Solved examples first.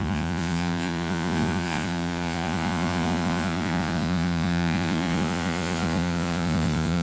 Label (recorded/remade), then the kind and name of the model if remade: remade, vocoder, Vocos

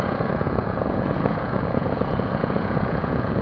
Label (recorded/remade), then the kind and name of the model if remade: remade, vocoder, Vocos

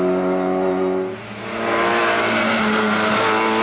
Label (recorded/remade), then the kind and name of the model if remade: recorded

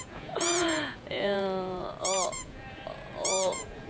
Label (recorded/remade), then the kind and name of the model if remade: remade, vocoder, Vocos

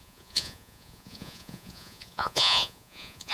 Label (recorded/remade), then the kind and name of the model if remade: remade, vocoder, Vocos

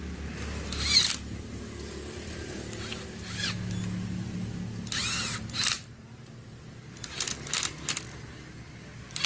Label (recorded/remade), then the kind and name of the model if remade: recorded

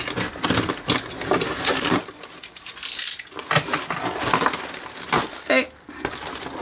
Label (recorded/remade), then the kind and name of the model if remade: recorded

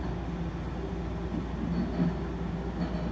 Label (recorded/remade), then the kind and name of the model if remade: recorded